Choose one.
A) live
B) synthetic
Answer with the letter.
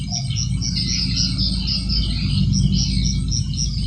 A